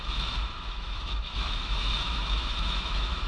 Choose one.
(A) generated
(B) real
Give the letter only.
A